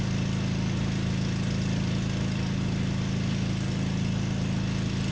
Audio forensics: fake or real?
real